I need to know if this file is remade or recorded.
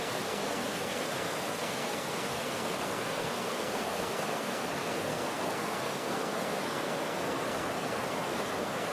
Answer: remade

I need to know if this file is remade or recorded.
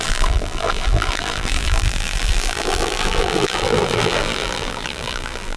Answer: remade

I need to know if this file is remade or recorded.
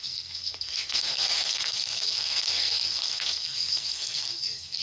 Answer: remade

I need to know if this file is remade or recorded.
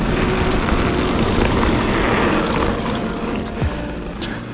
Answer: recorded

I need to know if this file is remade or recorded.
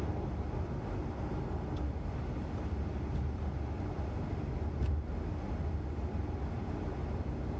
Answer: recorded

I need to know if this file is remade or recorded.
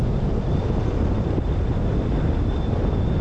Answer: recorded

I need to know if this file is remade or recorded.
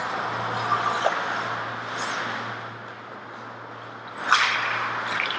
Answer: recorded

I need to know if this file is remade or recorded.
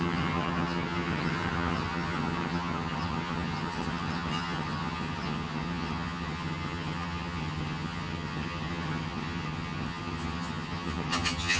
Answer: remade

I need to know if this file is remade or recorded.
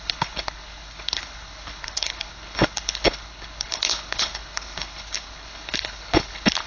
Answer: remade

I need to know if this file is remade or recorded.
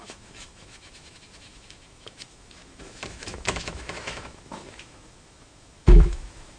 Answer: remade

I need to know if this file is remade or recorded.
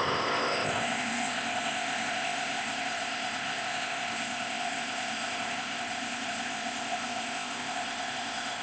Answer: remade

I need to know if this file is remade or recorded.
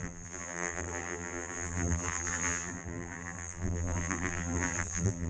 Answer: remade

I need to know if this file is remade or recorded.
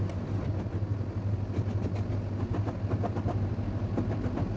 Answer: recorded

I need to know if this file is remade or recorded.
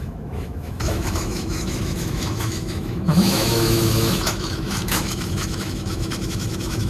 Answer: remade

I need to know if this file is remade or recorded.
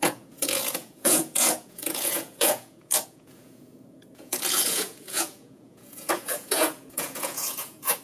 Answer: remade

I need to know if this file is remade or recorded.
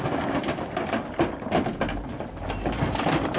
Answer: recorded